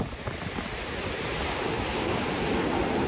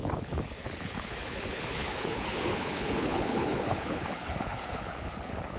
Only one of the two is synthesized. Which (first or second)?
second